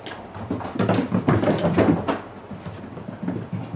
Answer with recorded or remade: recorded